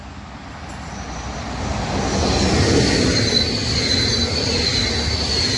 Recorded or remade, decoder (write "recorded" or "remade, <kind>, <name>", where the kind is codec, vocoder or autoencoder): recorded